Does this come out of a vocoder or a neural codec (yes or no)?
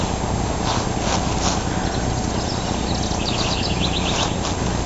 no